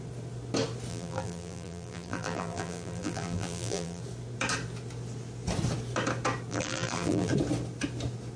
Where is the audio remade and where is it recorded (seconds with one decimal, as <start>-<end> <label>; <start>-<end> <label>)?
0.0-0.9 recorded; 0.9-4.0 remade; 4.0-6.5 recorded; 6.5-7.3 remade; 7.3-8.4 recorded